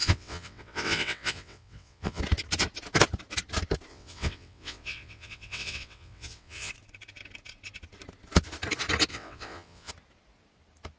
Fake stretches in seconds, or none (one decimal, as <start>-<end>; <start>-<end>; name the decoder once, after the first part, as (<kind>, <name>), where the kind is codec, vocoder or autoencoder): 0.0-2.2 (vocoder, WaveNeXt); 3.9-6.7; 9.1-9.9